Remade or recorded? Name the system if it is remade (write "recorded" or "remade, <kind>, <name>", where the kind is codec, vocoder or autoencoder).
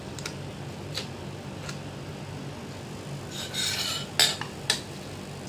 recorded